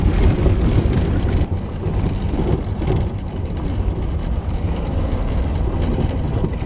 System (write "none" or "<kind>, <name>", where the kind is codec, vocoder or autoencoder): vocoder, BigVGAN v2